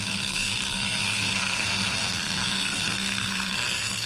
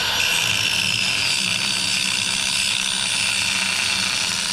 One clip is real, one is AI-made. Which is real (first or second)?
second